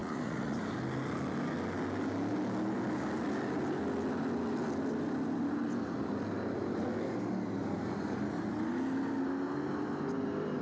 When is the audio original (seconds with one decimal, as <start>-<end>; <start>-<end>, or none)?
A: 0.6-10.6